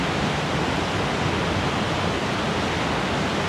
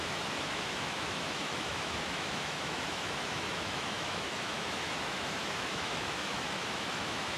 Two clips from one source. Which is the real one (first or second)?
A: first